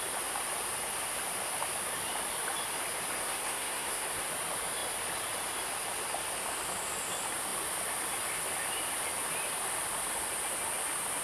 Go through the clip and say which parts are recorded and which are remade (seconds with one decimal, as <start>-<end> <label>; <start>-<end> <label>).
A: 0.0-3.2 recorded; 3.2-4.3 remade; 4.3-11.2 recorded